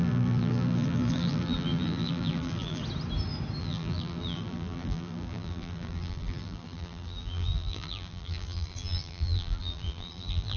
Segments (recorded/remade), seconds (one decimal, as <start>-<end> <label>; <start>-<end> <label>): 0.0-2.8 remade; 2.8-3.6 recorded; 3.6-10.6 remade